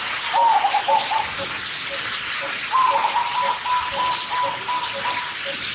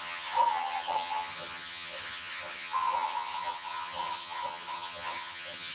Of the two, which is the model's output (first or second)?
second